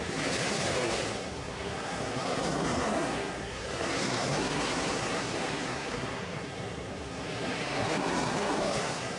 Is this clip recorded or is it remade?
remade